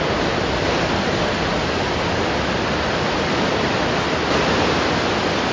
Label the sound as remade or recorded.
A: recorded